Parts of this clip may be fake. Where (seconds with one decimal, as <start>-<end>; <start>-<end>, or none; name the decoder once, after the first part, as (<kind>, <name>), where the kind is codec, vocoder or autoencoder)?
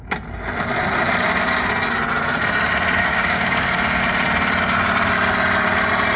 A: 3.0-4.0 (codec, DAC)